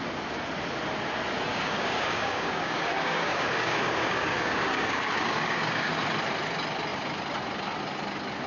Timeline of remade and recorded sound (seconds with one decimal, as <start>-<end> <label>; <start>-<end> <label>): 0.0-1.5 recorded; 1.5-5.9 remade; 5.9-8.5 recorded